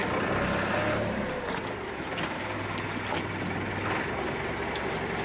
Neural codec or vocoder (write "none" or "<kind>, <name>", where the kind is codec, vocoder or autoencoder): none